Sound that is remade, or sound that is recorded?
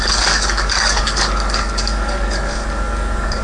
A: remade